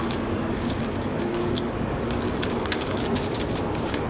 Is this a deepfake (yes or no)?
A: yes